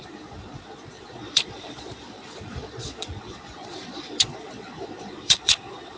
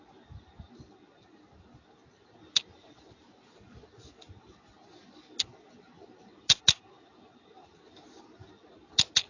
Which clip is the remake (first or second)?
first